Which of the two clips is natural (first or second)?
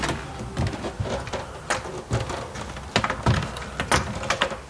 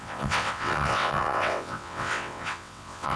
first